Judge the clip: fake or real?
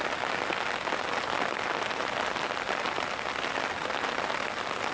real